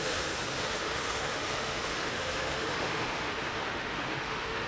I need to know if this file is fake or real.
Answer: fake